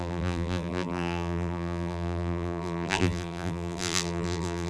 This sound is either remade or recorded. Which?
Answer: remade